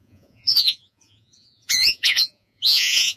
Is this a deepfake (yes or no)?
yes